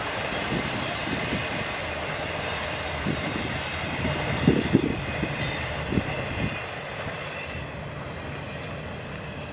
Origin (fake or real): real